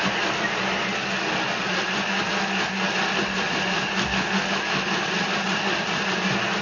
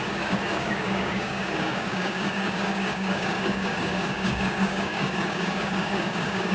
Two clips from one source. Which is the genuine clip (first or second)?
first